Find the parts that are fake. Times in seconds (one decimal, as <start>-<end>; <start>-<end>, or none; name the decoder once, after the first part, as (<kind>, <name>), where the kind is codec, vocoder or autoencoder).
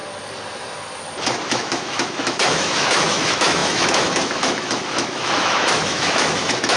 1.5-6.8 (autoencoder, DAC-VAE)